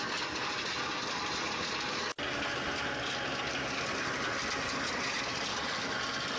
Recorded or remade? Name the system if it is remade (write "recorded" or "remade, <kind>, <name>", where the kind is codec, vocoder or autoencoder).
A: recorded